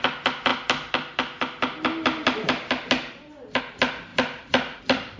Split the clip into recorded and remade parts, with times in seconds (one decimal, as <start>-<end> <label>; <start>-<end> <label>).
0.0-0.5 remade; 0.5-3.6 recorded; 3.6-5.2 remade

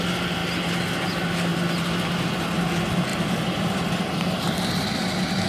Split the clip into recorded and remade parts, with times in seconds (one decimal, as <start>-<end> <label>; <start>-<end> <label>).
0.0-5.5 recorded

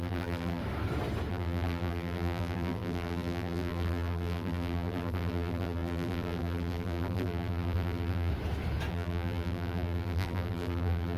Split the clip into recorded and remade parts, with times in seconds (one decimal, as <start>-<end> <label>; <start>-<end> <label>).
0.0-0.6 remade; 0.6-1.3 recorded; 1.3-8.3 remade; 8.3-8.9 recorded; 8.9-11.2 remade

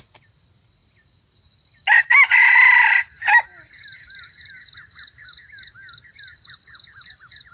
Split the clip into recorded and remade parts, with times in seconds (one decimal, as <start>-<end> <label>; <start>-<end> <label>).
0.0-7.5 recorded

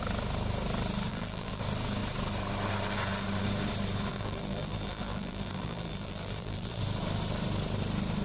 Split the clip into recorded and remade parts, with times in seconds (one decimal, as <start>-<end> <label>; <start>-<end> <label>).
0.0-1.1 recorded; 1.1-1.6 remade; 1.6-4.1 recorded; 4.1-6.8 remade; 6.8-8.2 recorded

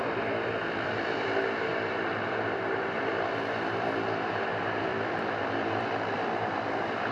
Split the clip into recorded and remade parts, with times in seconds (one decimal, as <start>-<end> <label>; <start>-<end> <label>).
0.0-4.9 recorded; 4.9-7.1 remade